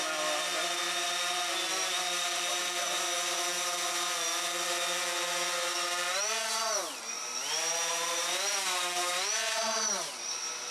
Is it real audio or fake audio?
real